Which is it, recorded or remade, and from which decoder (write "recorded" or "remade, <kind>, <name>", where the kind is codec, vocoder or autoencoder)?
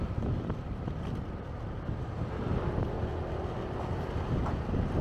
recorded